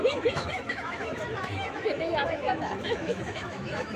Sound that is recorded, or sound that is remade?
remade